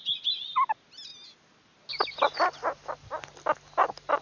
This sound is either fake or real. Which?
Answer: real